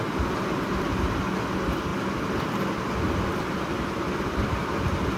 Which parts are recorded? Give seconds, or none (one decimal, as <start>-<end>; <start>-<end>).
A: 0.0-5.2